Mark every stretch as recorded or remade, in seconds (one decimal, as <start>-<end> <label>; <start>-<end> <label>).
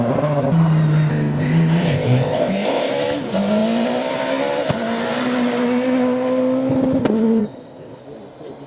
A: 0.0-1.1 recorded; 1.1-2.9 remade; 2.9-7.4 recorded; 7.4-8.0 remade; 8.0-8.7 recorded